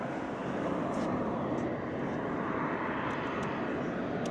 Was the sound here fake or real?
real